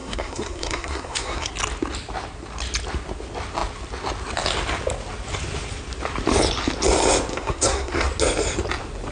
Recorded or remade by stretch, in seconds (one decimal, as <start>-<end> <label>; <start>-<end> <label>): 0.0-1.5 remade; 1.5-7.3 recorded; 7.3-8.1 remade; 8.1-9.1 recorded